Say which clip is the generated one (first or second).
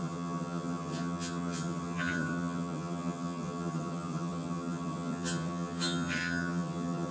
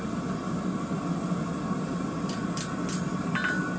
first